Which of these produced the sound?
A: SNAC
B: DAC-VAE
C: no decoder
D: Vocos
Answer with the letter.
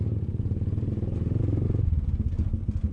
C